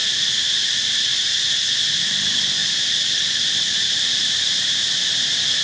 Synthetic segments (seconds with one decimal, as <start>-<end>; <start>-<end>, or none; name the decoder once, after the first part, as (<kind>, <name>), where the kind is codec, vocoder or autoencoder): 2.0-5.6 (vocoder, BigVGAN v2)